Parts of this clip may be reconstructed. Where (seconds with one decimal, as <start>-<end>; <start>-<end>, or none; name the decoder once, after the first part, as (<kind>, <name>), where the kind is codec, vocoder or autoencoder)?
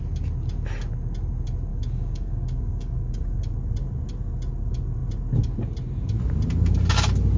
1.7-3.4 (codec, DAC)